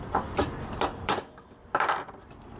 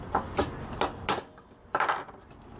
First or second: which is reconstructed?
first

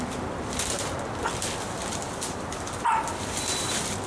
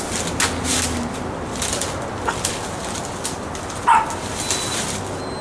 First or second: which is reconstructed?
first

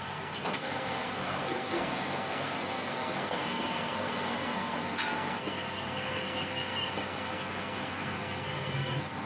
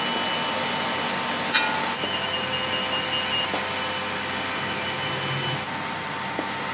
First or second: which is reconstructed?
first